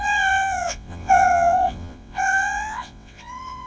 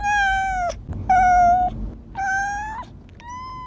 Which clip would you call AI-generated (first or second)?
first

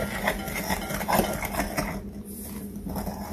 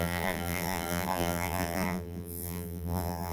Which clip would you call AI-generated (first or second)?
second